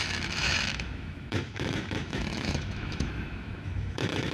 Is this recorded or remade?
remade